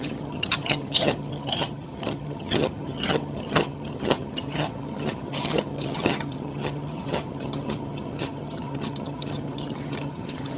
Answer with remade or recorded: remade